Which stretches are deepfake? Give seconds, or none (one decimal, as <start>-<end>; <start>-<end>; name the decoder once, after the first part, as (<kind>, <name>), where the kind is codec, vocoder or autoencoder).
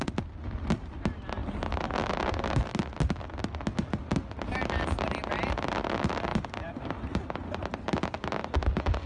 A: none